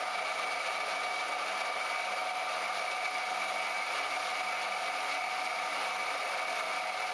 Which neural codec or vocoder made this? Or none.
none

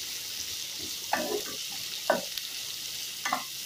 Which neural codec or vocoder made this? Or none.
none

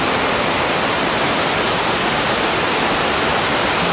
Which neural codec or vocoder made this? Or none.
none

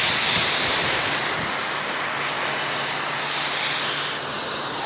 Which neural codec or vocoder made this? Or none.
none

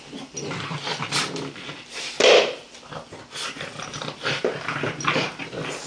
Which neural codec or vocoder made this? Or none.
none